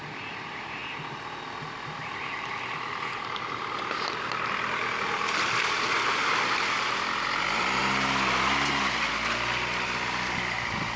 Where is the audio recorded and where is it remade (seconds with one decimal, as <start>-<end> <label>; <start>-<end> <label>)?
0.0-0.8 remade; 0.8-2.0 recorded; 2.0-7.8 remade; 7.8-9.1 recorded; 9.1-11.0 remade